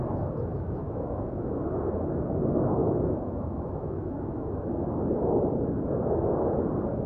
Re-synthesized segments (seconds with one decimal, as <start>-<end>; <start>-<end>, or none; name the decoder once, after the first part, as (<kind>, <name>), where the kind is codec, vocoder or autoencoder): 0.5-1.2 (autoencoder, DAC-VAE); 2.8-4.5